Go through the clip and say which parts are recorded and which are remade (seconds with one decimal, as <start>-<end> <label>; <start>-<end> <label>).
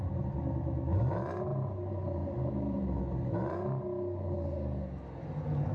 0.0-1.5 recorded; 1.5-3.0 remade; 3.0-5.7 recorded